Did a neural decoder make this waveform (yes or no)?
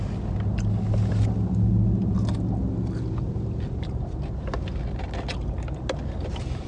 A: no